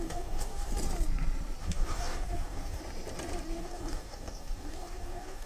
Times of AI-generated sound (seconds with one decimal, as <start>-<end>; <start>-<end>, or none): 0.0-0.7; 1.6-2.8; 3.6-5.5